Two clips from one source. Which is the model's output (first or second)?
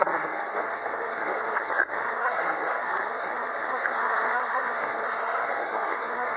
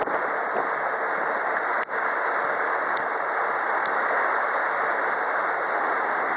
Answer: first